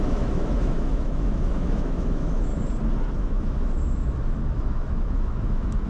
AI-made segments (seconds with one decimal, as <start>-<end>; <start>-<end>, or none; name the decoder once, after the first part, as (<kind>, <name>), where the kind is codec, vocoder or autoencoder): 0.0-2.5 (autoencoder, DAC-VAE); 3.2-5.9